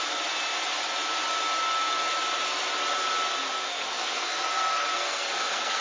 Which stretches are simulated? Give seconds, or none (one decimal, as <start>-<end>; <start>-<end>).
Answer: 3.4-5.8